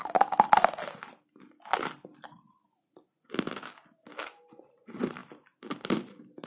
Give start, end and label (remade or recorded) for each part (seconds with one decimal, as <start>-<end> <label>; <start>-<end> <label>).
0.0-6.5 recorded